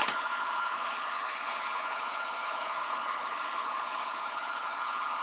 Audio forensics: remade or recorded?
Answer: remade